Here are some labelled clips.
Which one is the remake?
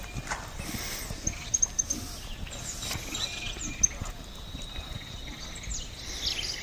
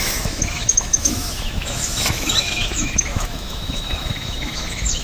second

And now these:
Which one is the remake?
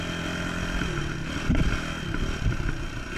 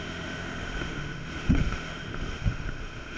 second